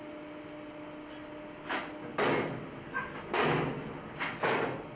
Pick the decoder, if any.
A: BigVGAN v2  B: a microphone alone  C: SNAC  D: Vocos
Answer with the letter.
B